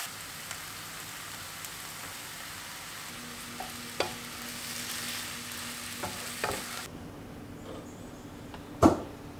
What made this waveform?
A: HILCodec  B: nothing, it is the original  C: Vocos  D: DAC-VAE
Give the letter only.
B